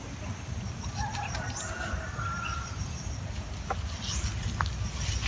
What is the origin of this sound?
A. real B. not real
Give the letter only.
A